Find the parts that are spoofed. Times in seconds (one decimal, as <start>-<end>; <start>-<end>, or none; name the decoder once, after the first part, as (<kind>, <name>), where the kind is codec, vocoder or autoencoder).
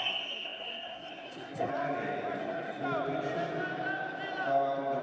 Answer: 0.0-1.7 (codec, SNAC); 2.4-2.8